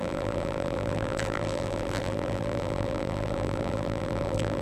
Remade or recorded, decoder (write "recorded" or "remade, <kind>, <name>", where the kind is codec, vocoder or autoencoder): remade, vocoder, BigVGAN v2